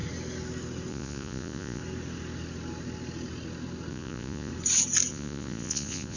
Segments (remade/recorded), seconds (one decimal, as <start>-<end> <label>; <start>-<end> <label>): 0.0-0.9 recorded; 0.9-1.8 remade; 1.8-3.9 recorded; 3.9-4.5 remade; 4.5-5.1 recorded; 5.1-6.2 remade